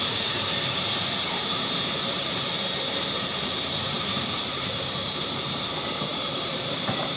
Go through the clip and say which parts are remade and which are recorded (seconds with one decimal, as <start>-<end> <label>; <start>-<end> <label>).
0.0-7.2 remade